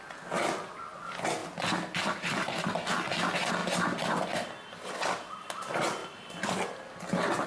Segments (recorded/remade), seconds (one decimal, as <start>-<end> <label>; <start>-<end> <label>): 0.0-7.5 recorded